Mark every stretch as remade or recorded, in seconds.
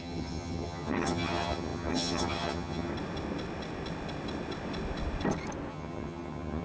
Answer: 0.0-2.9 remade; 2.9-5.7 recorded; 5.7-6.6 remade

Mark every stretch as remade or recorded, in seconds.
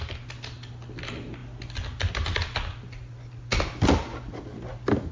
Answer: 0.0-5.1 recorded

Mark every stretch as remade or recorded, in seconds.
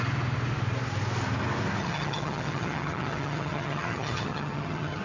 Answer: 0.0-1.8 recorded; 1.8-5.0 remade